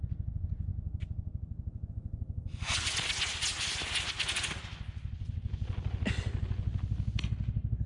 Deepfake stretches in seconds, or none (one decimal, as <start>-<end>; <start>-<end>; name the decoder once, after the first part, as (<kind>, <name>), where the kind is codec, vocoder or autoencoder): none